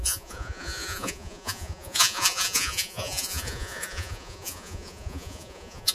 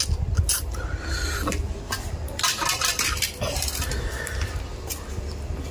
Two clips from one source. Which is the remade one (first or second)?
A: first